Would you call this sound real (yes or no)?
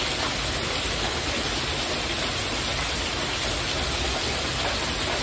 yes